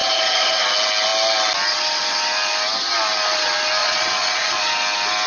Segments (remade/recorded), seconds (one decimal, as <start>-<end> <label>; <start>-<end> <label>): 0.0-0.6 remade; 0.6-3.8 recorded; 3.8-4.6 remade; 4.6-5.3 recorded